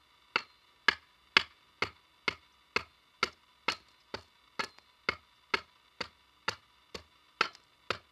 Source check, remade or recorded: recorded